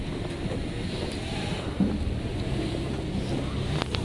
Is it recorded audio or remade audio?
recorded